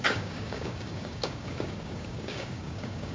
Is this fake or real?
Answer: fake